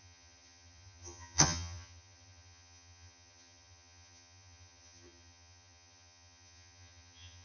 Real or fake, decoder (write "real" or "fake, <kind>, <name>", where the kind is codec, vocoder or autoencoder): fake, vocoder, HiFi-GAN